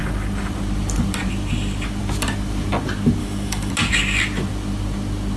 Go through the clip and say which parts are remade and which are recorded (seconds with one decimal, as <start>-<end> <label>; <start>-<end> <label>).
0.0-3.2 recorded; 3.2-3.7 remade; 3.7-5.4 recorded